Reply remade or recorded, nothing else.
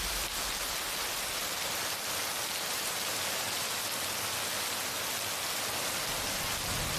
recorded